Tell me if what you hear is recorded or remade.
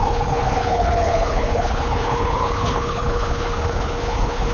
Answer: remade